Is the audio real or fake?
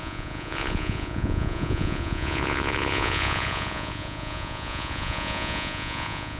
fake